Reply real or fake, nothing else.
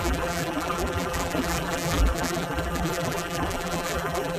fake